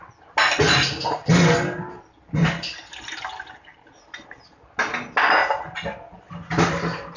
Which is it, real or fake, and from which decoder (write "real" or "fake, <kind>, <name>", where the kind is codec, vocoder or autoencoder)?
real